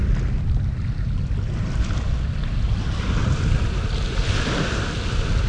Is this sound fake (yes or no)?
no